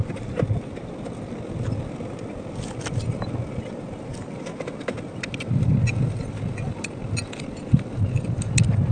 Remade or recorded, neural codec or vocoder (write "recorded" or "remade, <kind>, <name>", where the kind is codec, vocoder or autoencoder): recorded